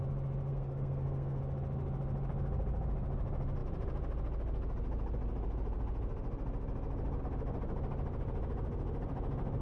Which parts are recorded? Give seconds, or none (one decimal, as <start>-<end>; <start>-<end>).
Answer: 0.0-0.5; 1.4-9.6